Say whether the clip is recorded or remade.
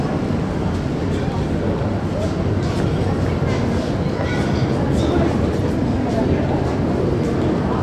recorded